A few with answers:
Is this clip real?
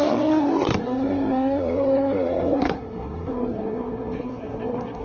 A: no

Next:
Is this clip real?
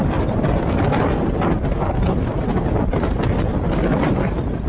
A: yes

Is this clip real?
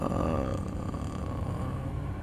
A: yes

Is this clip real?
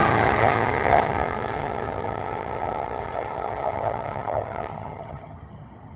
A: no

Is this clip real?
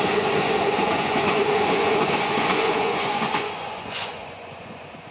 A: no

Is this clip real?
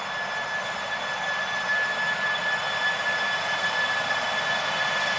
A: yes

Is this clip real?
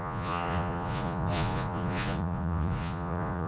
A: no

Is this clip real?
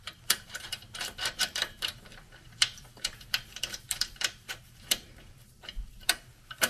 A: no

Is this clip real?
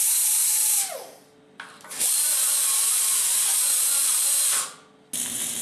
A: yes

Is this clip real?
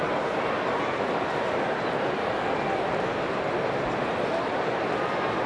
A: yes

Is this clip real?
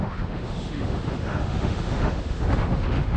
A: no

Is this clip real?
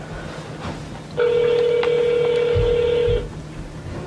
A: yes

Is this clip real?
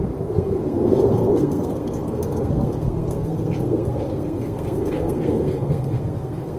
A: no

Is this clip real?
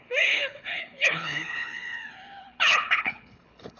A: no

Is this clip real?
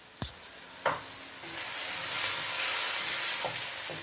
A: yes